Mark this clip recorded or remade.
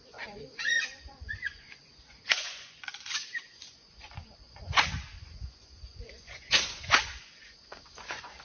remade